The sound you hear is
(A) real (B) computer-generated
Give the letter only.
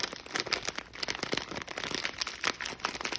A